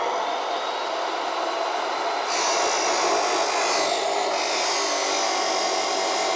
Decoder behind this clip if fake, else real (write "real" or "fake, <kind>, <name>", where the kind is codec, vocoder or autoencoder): real